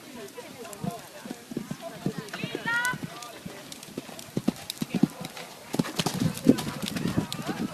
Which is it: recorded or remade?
recorded